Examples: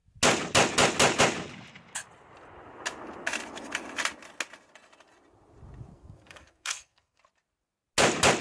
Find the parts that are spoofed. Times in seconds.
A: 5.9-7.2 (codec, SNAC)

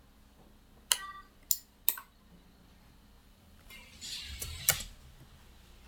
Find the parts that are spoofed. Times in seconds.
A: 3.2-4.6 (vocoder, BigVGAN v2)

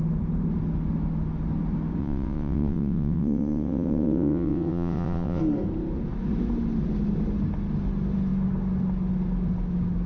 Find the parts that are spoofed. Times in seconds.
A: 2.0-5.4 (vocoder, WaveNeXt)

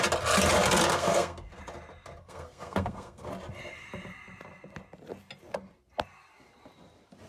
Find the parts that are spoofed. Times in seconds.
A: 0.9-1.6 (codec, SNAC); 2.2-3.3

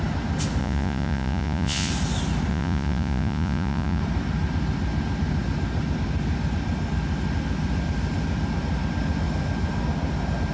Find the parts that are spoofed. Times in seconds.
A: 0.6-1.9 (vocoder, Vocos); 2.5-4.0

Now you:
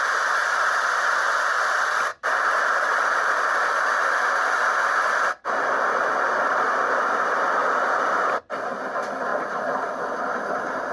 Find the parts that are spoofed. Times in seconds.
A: 0.4-1.2 (vocoder, BigVGAN v2); 2.1-6.6; 7.6-8.4; 9.3-10.9